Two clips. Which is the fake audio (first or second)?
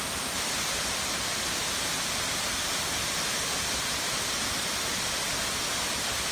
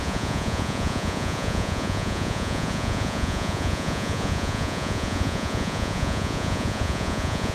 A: second